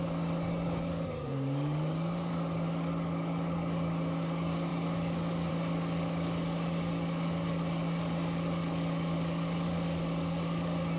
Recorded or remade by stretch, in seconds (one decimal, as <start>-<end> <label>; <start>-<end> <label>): 0.0-11.0 remade